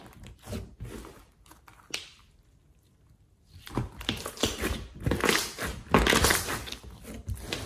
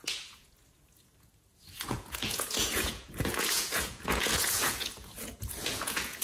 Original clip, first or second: first